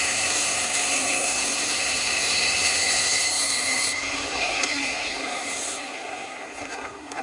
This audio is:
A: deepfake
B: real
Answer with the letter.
A